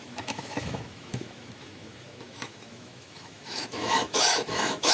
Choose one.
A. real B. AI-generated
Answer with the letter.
B